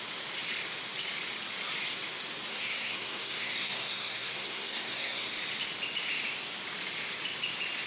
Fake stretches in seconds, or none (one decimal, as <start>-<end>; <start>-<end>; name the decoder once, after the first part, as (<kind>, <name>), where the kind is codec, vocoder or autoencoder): 2.5-5.3 (codec, SNAC)